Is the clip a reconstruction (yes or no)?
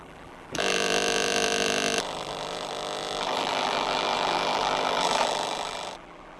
yes